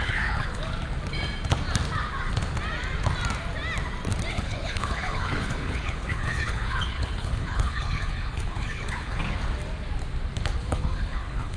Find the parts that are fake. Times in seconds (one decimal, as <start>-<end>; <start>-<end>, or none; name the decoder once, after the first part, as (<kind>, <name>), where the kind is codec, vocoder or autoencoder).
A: 0.0-0.6 (codec, HILCodec); 4.3-9.2; 10.6-11.6